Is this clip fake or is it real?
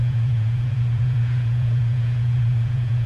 fake